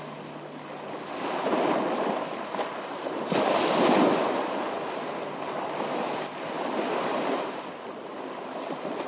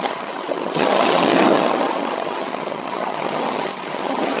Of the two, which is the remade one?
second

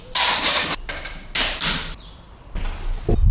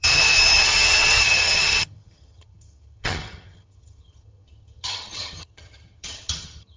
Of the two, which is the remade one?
second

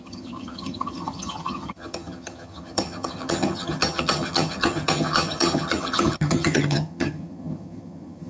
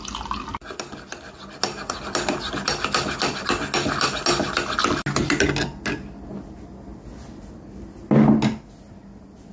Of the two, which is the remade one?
first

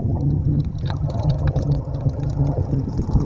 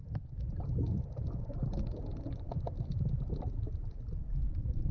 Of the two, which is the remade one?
first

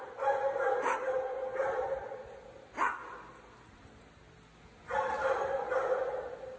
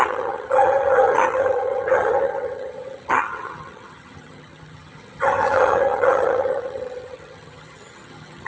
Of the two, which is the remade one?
second